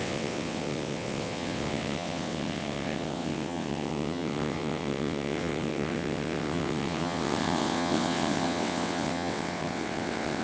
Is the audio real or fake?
fake